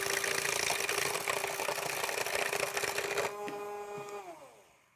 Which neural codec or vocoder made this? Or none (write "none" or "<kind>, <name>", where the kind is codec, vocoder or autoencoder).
none